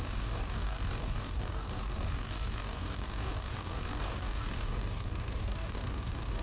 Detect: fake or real fake